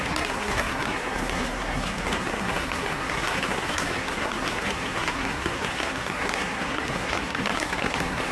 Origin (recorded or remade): remade